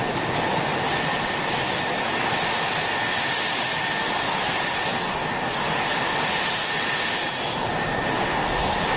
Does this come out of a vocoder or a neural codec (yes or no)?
no